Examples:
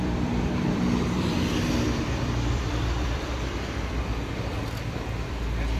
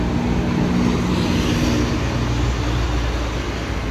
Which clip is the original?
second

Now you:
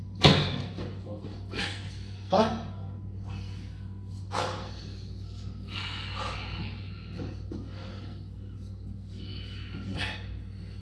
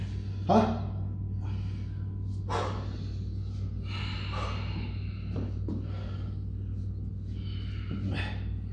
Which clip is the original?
second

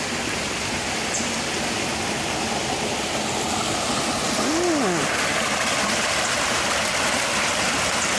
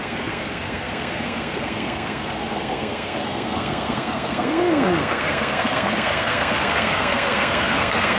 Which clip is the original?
first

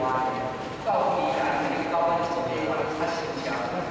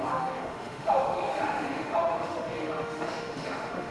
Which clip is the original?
first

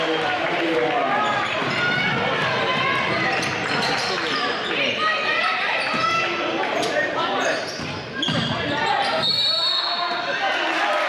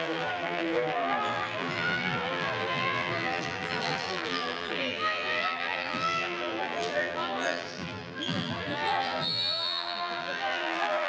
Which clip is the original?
first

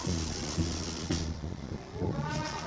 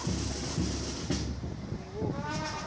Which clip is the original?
second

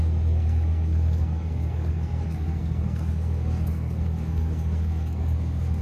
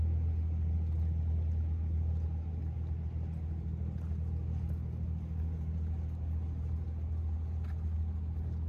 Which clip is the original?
second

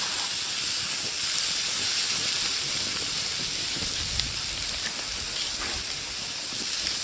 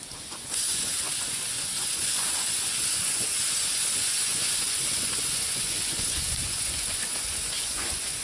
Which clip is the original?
first